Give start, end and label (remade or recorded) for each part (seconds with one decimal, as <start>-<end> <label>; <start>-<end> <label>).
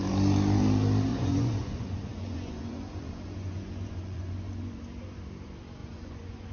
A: 0.0-1.1 recorded; 1.1-4.8 remade; 4.8-5.8 recorded; 5.8-6.5 remade